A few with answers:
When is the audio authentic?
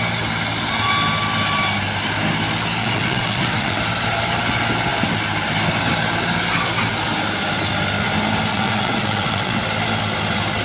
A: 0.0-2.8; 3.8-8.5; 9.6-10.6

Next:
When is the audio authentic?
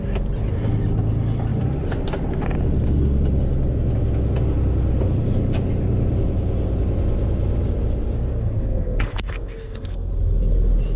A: 0.0-8.3; 10.1-11.0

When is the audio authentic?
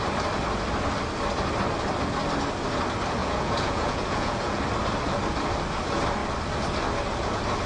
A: 0.0-3.2; 4.6-7.7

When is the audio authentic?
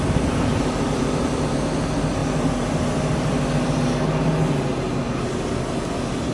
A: 0.0-0.5; 1.5-2.2; 3.9-6.3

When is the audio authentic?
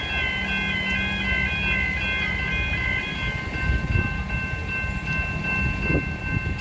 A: 0.0-6.6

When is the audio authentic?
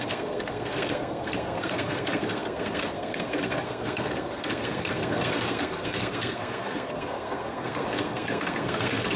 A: none